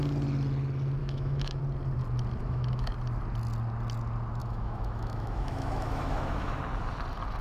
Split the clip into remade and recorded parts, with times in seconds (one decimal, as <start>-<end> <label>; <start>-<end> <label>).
0.0-1.0 recorded; 1.0-1.6 remade; 1.6-2.4 recorded; 2.4-2.9 remade; 2.9-4.4 recorded; 4.4-6.6 remade; 6.6-7.4 recorded